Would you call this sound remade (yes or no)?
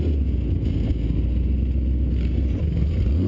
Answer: no